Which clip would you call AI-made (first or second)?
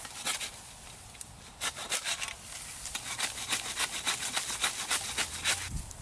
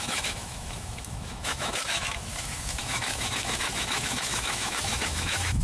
second